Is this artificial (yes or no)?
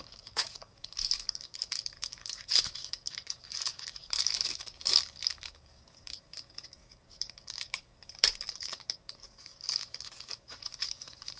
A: yes